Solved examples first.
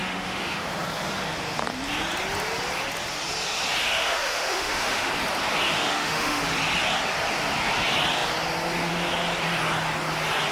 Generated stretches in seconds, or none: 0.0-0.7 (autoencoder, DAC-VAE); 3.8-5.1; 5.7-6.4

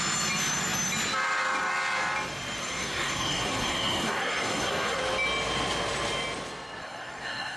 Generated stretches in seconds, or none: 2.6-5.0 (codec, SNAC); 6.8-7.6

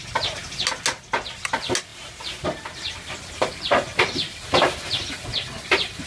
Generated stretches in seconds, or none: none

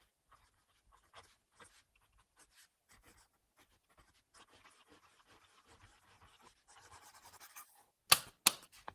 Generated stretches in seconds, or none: 5.9-8.0 (vocoder, BigVGAN v2)

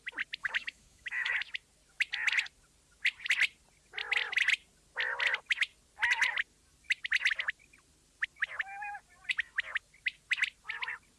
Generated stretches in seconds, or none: 0.4-1.3 (autoencoder, DAC-VAE)